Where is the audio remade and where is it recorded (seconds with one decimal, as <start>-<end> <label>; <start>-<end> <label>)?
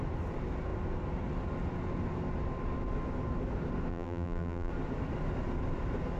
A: 0.0-3.9 recorded; 3.9-4.7 remade; 4.7-6.2 recorded